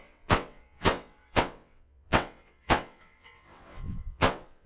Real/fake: fake